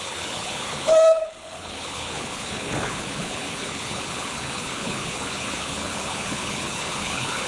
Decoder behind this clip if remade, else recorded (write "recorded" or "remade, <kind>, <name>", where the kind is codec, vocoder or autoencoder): remade, codec, HILCodec